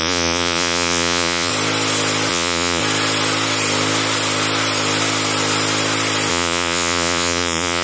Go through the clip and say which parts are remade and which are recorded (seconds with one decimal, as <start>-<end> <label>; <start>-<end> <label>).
0.0-1.5 remade; 1.5-2.3 recorded; 2.3-2.8 remade; 2.8-6.3 recorded; 6.3-7.8 remade